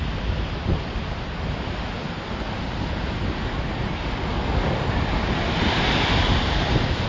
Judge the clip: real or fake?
real